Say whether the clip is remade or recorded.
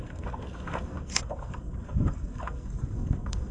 remade